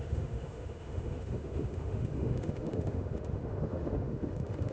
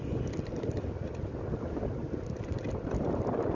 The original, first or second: second